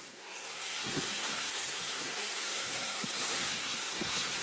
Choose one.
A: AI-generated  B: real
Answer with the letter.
A